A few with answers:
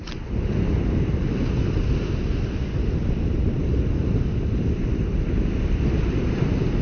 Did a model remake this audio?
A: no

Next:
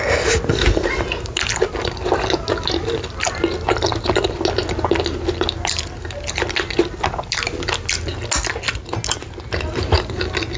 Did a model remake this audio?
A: no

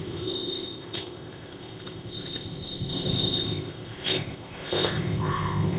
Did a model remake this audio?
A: yes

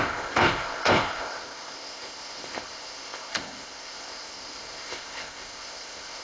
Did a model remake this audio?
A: yes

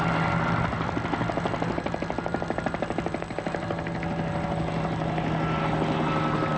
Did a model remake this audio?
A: no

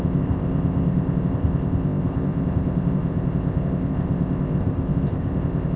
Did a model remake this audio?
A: yes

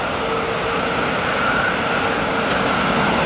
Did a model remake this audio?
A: no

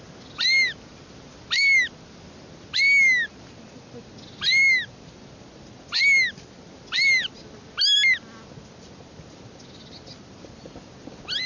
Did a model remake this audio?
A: no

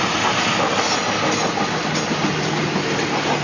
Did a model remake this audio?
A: no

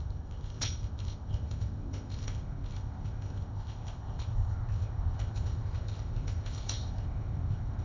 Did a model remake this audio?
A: yes